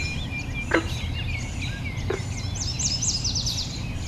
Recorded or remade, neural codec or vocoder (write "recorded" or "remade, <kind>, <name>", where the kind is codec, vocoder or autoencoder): recorded